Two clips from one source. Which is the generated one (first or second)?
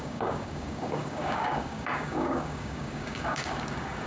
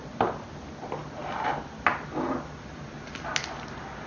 first